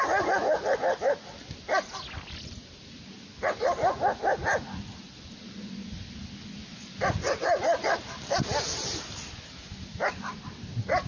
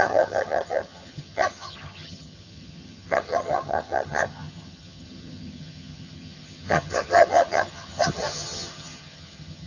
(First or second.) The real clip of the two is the first